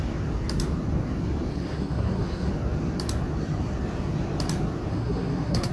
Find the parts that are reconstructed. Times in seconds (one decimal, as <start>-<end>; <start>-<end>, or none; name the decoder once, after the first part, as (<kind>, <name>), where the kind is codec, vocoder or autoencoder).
1.5-2.5 (codec, SNAC); 4.9-5.7